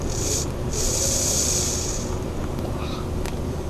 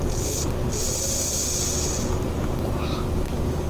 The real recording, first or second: second